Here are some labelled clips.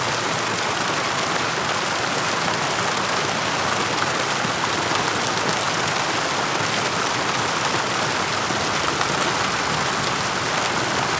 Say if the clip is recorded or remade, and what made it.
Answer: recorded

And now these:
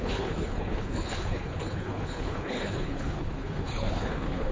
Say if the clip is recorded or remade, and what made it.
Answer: remade, codec, HILCodec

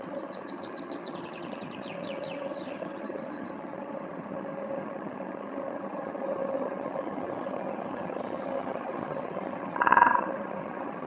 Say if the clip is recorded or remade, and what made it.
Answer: remade, vocoder, HiFi-GAN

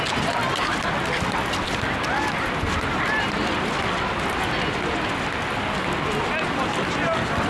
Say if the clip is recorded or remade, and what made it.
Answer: recorded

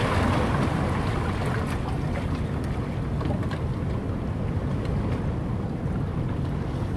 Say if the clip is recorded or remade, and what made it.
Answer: recorded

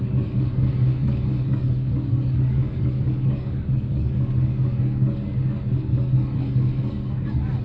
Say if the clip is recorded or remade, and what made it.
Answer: remade, codec, DAC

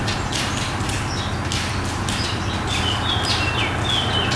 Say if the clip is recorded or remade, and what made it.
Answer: recorded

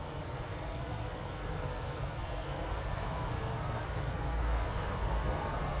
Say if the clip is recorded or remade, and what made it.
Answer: remade, codec, SNAC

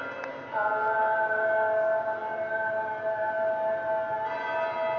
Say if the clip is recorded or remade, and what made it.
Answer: recorded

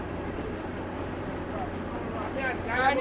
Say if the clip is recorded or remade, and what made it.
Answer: recorded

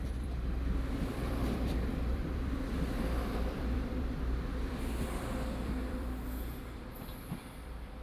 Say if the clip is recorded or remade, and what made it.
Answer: remade, vocoder, BigVGAN v2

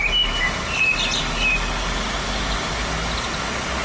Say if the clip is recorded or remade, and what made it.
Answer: recorded